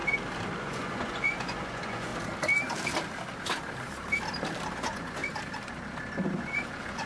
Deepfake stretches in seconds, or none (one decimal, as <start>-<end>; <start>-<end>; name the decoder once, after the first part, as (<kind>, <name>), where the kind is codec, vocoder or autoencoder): 0.6-2.1 (vocoder, Vocos); 4.7-5.2; 6.4-7.1